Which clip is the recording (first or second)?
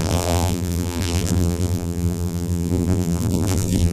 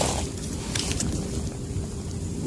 second